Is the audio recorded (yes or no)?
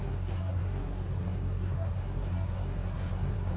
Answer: no